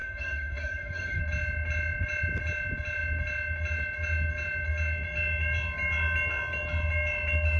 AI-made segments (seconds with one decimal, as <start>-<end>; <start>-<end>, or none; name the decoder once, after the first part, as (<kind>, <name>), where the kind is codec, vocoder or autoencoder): 0.0-1.2 (autoencoder, DAC-VAE)